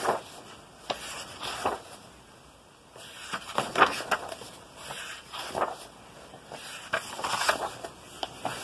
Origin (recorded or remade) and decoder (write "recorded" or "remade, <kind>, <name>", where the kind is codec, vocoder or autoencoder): recorded